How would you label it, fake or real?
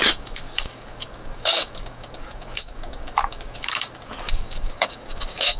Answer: fake